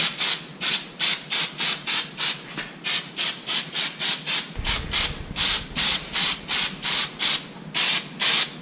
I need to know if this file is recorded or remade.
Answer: recorded